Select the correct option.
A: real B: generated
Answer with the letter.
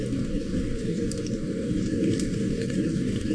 B